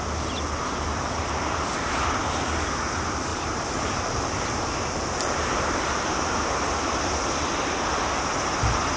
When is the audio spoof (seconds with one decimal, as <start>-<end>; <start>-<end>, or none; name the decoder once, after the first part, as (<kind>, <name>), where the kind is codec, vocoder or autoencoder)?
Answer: 0.9-1.9 (vocoder, BigVGAN v2); 3.3-7.5